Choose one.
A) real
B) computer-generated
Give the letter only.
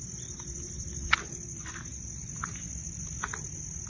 A